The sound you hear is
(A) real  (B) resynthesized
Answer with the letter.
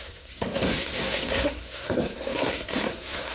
B